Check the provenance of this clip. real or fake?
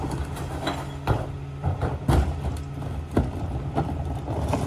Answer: real